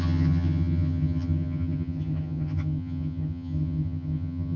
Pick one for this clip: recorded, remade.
remade